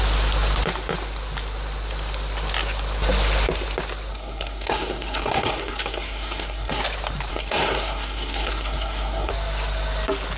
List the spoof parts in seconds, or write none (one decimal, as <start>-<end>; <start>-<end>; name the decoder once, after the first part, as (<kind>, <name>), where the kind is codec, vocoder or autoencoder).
4.1-6.8 (codec, SNAC); 7.3-9.3